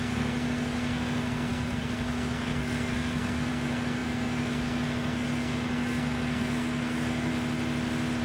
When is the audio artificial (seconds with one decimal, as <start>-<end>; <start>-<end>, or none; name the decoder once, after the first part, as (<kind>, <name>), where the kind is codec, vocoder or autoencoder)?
0.0-7.3 (codec, SNAC)